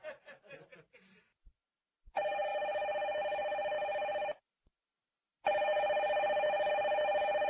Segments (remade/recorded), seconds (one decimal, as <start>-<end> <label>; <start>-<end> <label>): 0.0-7.5 recorded